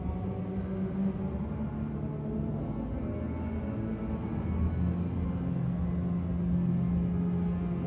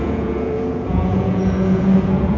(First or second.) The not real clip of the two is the second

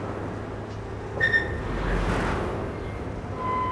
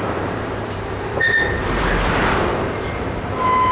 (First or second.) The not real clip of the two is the second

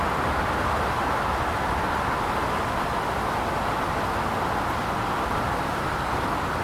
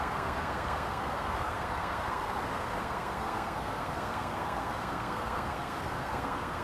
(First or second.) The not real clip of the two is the second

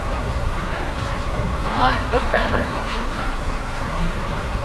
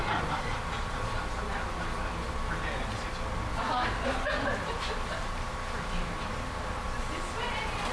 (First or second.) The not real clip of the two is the first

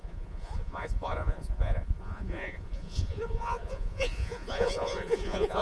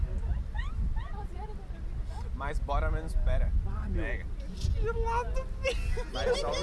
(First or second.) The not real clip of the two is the first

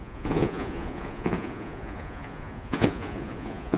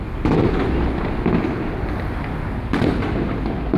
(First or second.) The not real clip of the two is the first